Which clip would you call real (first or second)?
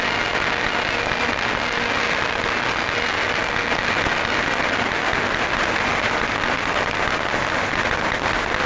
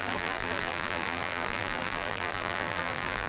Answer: first